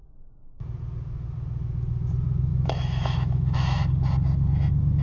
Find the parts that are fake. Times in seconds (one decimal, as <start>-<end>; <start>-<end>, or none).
2.5-3.8